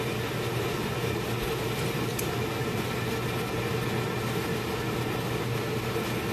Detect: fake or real real